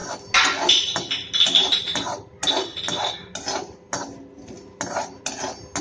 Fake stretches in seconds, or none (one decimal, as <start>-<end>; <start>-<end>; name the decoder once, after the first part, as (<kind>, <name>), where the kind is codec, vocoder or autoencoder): none